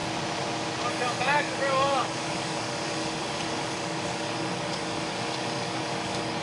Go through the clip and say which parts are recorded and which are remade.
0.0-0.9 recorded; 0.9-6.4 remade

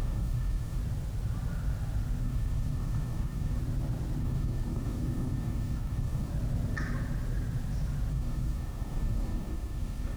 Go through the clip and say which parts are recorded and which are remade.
0.0-0.8 remade; 0.8-2.2 recorded; 2.2-3.6 remade; 3.6-4.2 recorded; 4.2-6.3 remade; 6.3-8.1 recorded; 8.1-10.2 remade

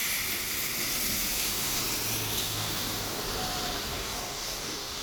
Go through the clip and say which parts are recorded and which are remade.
0.0-1.3 recorded; 1.3-1.8 remade; 1.8-2.4 recorded; 2.4-3.2 remade; 3.2-3.8 recorded; 3.8-5.0 remade

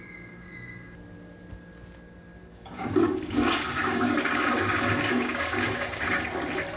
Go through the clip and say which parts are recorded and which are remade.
0.0-2.5 recorded; 2.5-6.2 remade; 6.2-6.8 recorded

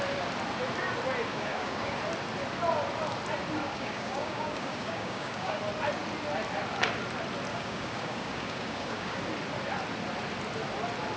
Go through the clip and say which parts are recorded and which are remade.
0.0-1.3 recorded; 1.3-2.0 remade; 2.0-3.6 recorded; 3.6-5.6 remade; 5.6-7.5 recorded; 7.5-9.2 remade; 9.2-11.2 recorded

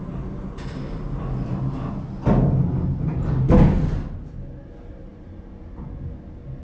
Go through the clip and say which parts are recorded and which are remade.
0.0-6.6 recorded

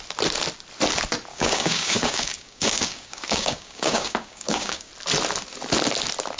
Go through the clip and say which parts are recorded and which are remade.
0.0-1.3 recorded; 1.3-4.9 remade; 4.9-6.4 recorded